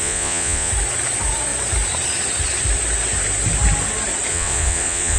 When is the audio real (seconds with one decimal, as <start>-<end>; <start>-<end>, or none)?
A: 0.7-4.3

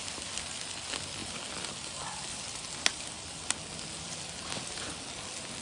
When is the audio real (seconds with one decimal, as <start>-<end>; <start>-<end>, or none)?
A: 0.0-5.6

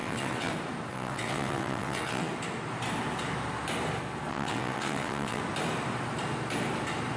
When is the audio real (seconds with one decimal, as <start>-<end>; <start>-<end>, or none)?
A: 0.5-0.9; 2.3-4.3; 5.4-7.2

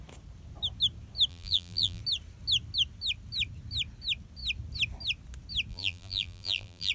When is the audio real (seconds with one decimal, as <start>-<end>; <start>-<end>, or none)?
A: 0.0-1.3; 2.0-5.7